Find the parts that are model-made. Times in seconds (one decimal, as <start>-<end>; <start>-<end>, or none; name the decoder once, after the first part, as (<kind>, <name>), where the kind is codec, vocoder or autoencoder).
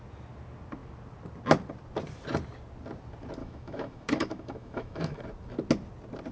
3.4-5.2 (autoencoder, DAC-VAE)